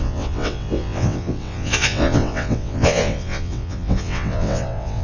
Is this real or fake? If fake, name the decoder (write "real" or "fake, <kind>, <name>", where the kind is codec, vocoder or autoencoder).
fake, vocoder, WaveNeXt